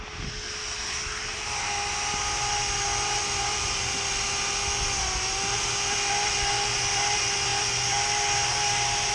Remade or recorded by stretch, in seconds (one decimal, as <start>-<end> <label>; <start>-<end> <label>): 0.0-9.1 recorded